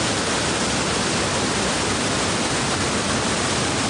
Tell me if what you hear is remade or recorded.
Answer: recorded